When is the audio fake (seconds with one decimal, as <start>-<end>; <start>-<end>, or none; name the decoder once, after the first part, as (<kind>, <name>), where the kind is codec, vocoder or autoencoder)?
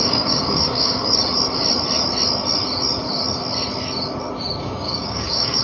0.0-1.2 (codec, DAC); 4.6-5.6